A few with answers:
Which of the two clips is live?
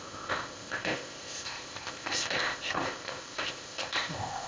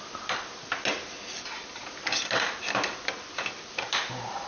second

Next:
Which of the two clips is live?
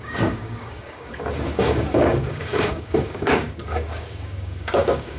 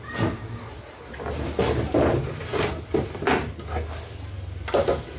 second